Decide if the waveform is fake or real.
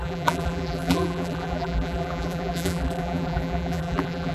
fake